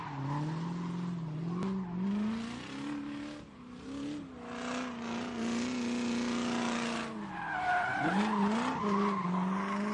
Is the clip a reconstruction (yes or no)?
no